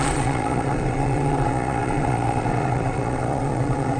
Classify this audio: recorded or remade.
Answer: remade